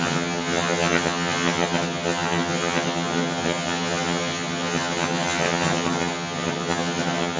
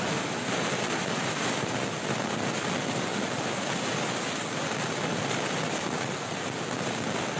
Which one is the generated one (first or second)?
first